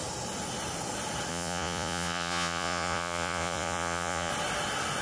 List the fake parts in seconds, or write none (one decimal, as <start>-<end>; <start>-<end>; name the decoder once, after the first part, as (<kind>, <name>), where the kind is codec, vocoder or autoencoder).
1.3-4.3 (vocoder, Vocos)